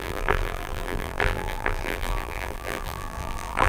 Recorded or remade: remade